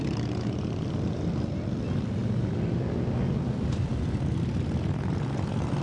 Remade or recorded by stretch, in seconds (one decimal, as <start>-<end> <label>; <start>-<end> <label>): 0.0-5.8 recorded